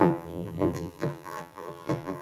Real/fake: fake